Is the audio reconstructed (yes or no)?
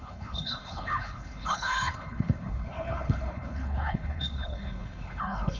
yes